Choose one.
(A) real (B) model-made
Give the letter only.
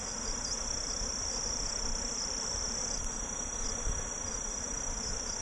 A